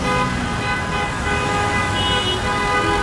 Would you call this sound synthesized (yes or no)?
no